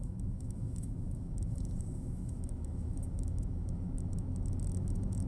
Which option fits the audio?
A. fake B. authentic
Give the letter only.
A